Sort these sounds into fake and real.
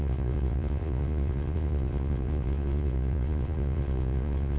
fake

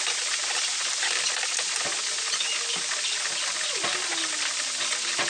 real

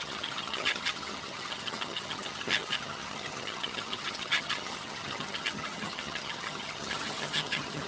fake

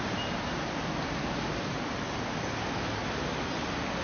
real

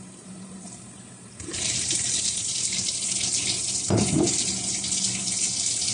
fake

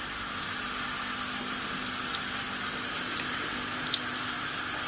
real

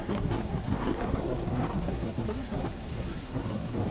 fake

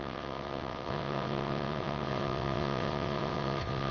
fake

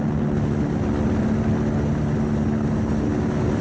real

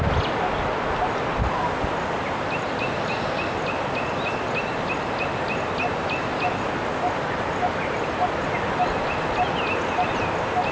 real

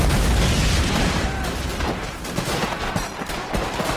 fake